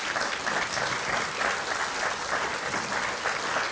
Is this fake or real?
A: real